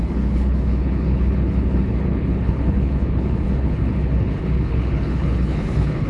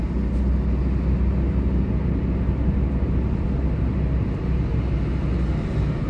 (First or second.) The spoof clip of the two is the first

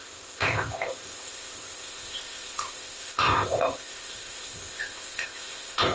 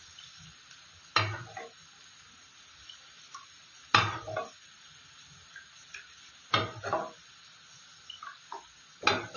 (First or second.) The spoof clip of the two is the first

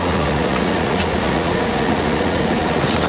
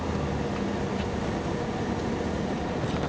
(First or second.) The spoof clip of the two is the first